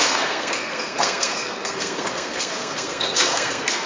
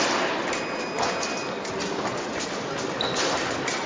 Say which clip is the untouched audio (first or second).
second